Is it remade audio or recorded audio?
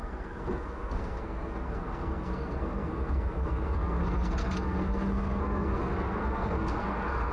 remade